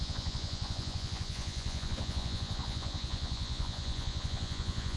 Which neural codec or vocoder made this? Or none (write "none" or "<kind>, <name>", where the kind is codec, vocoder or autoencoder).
vocoder, Vocos